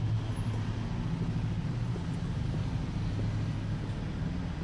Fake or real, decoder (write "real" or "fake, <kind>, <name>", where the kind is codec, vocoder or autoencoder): real